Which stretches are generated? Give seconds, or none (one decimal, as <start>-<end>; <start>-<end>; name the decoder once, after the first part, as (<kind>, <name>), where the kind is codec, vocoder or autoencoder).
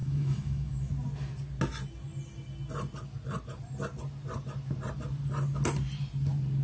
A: 0.0-0.9 (autoencoder, DAC-VAE)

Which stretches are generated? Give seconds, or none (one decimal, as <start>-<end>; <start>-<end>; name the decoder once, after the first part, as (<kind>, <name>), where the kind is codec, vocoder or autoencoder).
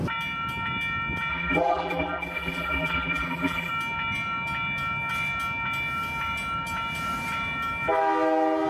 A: 1.3-3.7 (vocoder, BigVGAN v2)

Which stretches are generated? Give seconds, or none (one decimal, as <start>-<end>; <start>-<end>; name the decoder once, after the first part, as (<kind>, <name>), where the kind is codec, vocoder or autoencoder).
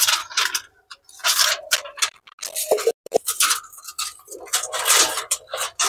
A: 1.2-2.0 (vocoder, BigVGAN v2)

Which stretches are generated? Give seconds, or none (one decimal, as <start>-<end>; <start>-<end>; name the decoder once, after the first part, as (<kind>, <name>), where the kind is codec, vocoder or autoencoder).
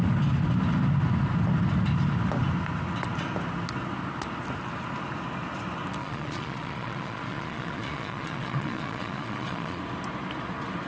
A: 6.0-9.8 (vocoder, Vocos)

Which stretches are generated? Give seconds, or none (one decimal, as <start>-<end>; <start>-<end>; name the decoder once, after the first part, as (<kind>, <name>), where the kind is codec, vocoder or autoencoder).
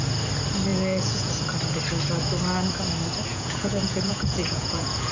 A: 0.7-1.3 (vocoder, Vocos); 3.3-5.1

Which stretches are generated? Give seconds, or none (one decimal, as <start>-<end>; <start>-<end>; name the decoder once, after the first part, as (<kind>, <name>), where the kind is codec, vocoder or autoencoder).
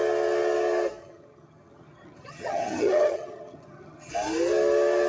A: 1.0-4.1 (vocoder, HiFi-GAN)